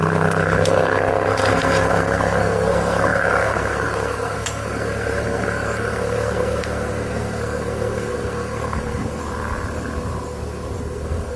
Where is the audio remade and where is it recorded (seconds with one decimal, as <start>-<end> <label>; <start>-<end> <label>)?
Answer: 0.0-9.2 remade; 9.2-10.8 recorded; 10.8-11.4 remade